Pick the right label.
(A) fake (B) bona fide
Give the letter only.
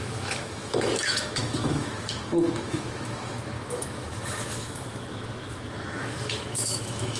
A